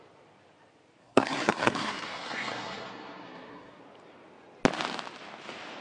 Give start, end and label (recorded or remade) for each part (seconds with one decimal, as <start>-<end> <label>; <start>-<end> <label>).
0.0-1.0 recorded; 1.0-3.8 remade; 3.8-5.8 recorded